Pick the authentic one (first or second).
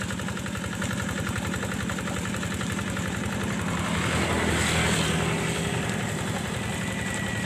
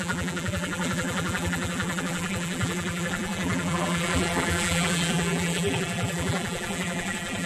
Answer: first